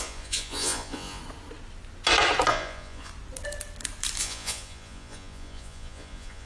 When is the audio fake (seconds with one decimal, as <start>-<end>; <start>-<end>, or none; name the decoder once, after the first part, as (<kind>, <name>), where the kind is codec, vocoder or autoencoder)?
0.0-1.2 (vocoder, Vocos); 2.5-3.1; 4.2-6.5